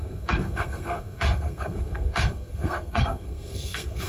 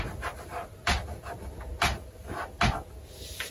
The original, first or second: second